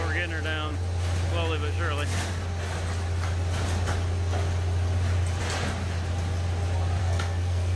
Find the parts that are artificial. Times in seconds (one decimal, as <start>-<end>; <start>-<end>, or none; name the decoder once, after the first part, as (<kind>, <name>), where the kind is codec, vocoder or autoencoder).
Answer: 7.0-7.8 (codec, SNAC)